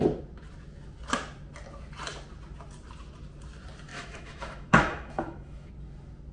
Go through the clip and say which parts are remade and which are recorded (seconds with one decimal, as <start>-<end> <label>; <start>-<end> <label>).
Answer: 0.0-3.9 recorded; 3.9-5.7 remade; 5.7-6.3 recorded